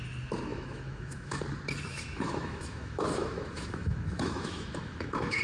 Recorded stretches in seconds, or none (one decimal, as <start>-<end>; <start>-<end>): 0.0-0.5; 1.4-1.9